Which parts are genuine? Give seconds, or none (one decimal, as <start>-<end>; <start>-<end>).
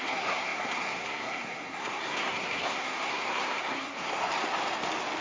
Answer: 4.2-5.2